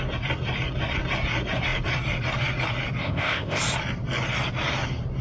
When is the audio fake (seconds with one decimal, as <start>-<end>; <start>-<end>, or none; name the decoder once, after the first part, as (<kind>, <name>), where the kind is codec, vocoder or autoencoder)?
3.0-3.6 (codec, ZipCodec)